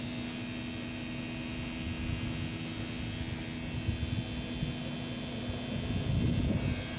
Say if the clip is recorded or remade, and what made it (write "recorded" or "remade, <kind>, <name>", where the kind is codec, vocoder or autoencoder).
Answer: recorded